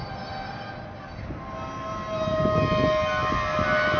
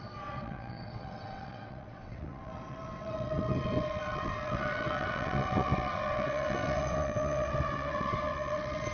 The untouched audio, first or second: first